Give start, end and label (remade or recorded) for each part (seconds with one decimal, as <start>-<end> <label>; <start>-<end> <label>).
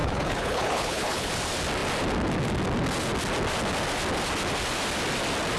0.0-1.3 remade; 1.3-5.6 recorded